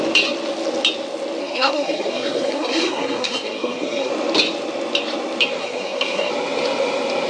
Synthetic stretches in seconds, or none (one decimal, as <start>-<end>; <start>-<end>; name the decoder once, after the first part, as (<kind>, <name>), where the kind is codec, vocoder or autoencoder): 1.4-4.1 (codec, SNAC); 5.6-6.3